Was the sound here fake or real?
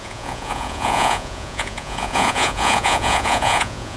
fake